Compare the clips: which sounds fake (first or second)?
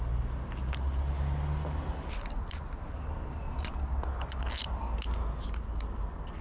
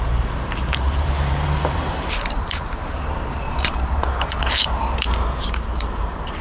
second